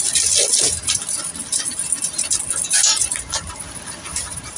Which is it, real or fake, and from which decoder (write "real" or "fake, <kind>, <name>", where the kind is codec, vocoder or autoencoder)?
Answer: real